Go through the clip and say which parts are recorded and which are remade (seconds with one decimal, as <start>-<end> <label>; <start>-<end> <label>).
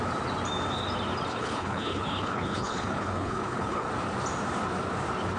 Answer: 0.0-1.3 recorded; 1.3-3.9 remade; 3.9-5.4 recorded